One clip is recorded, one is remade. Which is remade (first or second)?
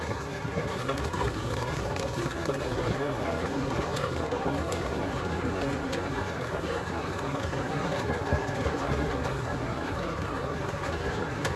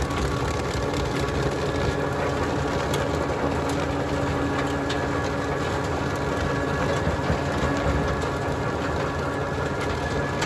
first